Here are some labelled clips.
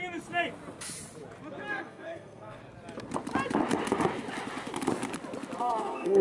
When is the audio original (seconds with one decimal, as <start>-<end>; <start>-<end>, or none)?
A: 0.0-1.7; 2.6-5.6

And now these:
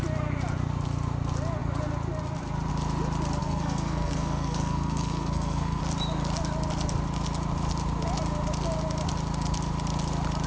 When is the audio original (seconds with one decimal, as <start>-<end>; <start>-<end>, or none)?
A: 0.0-3.4; 5.8-10.5

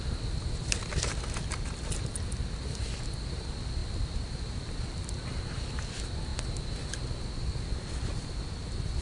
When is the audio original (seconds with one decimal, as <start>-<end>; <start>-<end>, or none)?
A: 0.0-9.0

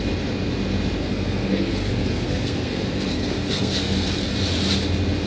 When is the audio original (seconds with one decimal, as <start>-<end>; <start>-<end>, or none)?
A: 0.0-1.0; 4.2-5.3

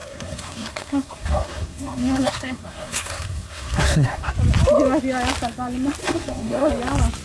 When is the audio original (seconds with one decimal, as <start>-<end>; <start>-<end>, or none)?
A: 4.3-6.0; 6.7-7.2

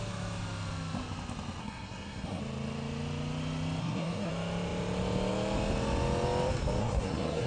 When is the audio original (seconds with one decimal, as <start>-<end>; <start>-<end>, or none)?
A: 0.0-1.6; 2.4-3.8; 4.3-6.8

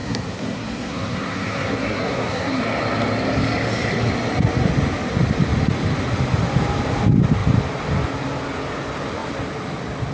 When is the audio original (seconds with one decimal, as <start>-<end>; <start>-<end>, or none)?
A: 2.6-10.1

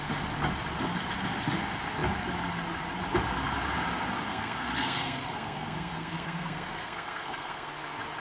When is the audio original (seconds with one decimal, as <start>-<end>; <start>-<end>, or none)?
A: 0.0-4.3; 7.7-8.2